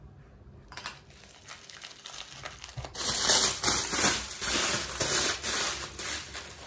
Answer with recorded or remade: recorded